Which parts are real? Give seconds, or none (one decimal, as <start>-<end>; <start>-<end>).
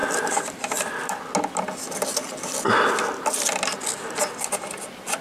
0.0-5.2